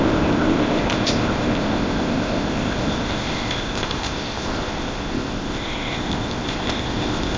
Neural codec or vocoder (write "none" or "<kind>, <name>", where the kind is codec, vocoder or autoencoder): codec, ZipCodec